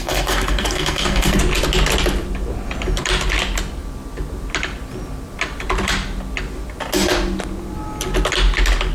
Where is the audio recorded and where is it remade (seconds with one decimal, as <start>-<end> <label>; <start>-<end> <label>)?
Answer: 0.0-1.4 remade; 1.4-8.9 recorded